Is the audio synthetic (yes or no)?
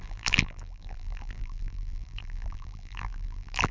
yes